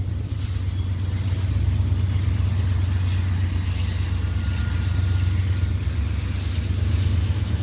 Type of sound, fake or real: real